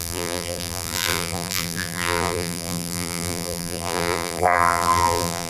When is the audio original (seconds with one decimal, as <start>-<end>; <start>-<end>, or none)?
none